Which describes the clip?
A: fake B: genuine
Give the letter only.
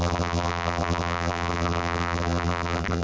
A